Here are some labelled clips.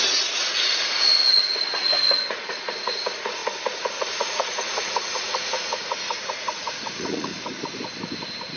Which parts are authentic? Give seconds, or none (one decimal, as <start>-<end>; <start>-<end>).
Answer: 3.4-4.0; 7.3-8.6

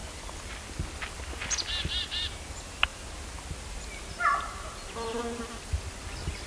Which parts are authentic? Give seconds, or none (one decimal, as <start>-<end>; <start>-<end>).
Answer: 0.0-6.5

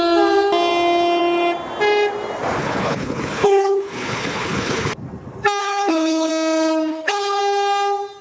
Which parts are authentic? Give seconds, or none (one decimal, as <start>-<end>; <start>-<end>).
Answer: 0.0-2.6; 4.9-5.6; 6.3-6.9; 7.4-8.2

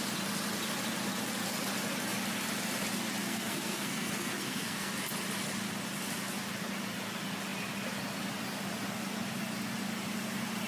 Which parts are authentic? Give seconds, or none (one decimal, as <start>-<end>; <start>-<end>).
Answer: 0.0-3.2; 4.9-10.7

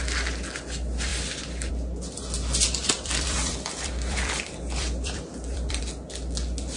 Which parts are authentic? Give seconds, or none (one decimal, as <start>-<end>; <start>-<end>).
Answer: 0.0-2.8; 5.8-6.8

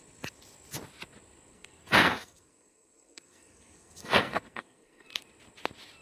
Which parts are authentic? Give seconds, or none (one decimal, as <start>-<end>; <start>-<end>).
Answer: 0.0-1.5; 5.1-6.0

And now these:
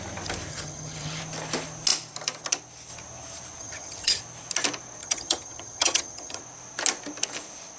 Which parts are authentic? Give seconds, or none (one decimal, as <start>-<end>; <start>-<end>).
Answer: 0.0-0.5; 1.2-3.6; 4.2-5.0; 6.4-7.8

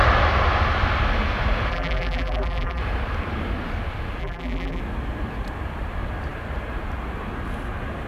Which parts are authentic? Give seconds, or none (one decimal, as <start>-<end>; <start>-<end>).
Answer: 0.0-1.7; 2.8-4.2; 4.8-8.1